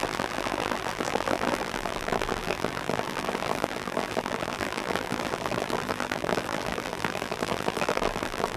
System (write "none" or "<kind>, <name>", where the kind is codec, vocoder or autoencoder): vocoder, BigVGAN v2